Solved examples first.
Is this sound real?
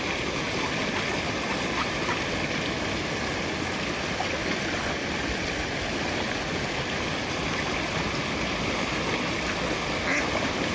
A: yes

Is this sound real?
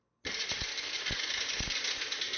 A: yes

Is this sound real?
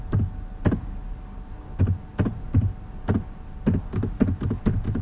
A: yes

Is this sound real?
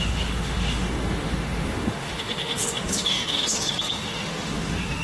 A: no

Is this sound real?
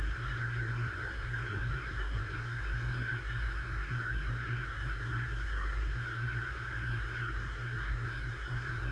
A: no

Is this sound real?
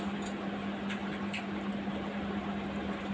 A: yes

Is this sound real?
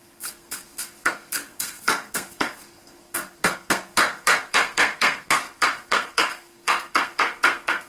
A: no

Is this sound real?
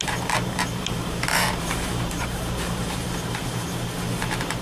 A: no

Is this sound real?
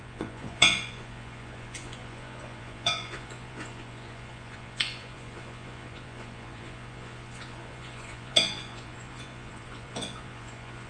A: no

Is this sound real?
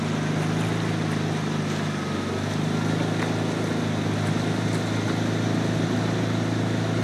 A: yes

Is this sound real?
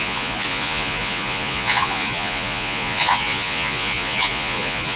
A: no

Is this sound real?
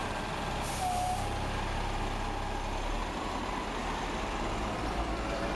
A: yes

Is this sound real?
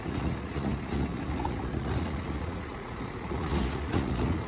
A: no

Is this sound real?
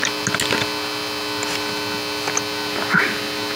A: yes